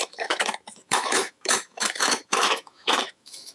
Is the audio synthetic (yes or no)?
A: yes